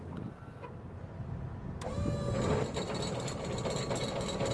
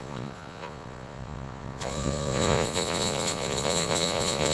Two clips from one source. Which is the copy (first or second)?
second